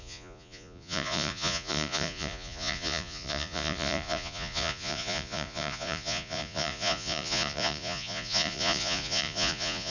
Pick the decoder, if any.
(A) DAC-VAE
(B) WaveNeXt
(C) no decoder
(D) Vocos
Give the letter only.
D